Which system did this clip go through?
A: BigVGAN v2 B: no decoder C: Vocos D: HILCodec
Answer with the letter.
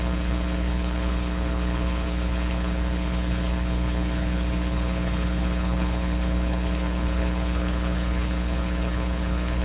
D